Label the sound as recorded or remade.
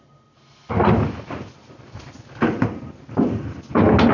recorded